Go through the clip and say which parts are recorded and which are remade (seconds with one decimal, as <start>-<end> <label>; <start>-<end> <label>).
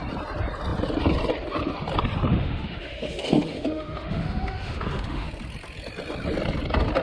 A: 0.0-2.3 recorded; 2.3-5.3 remade; 5.3-7.0 recorded